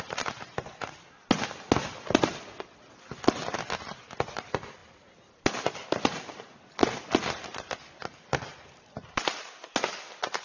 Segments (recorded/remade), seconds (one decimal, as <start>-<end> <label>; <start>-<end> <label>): 0.0-10.4 recorded